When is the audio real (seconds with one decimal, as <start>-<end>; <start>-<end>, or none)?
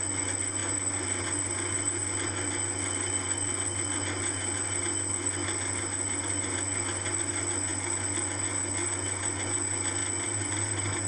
0.0-11.1